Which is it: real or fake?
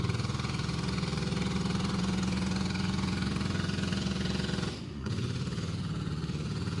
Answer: fake